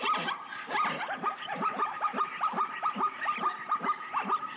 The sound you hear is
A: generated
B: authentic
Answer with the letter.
A